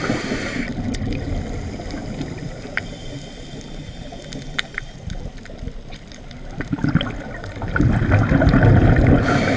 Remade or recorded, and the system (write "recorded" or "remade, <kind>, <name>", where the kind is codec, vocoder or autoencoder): recorded